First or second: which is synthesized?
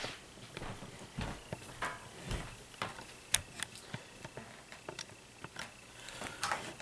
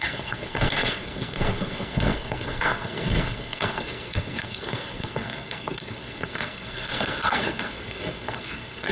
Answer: second